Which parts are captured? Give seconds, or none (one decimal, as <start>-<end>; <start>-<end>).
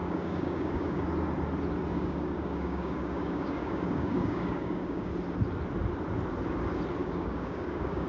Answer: 1.0-1.9; 5.1-7.0